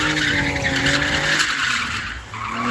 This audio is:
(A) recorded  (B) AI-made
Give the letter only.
A